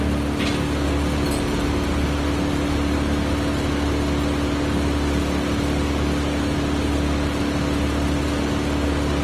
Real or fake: real